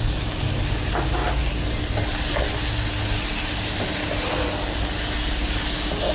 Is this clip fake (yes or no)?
no